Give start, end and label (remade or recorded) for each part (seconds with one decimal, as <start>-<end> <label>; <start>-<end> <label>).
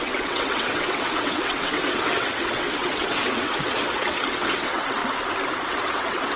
0.0-5.0 remade; 5.0-5.7 recorded; 5.7-6.4 remade